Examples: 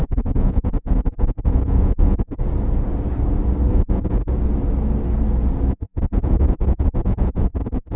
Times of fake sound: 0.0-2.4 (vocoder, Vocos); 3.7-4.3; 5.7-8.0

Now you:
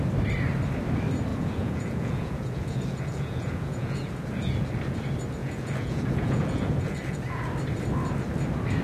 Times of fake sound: 1.3-4.6 (vocoder, Vocos); 5.4-7.5

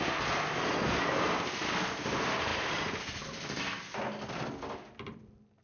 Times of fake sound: none